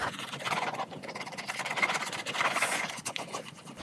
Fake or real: fake